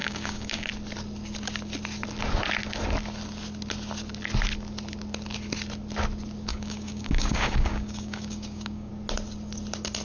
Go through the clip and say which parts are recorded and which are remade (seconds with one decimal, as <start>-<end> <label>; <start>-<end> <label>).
0.0-0.7 remade; 0.7-6.5 recorded; 6.5-8.9 remade; 8.9-10.0 recorded